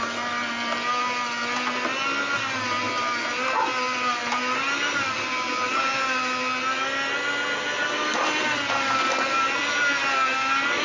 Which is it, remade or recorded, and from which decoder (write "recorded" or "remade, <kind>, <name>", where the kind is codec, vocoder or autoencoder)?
recorded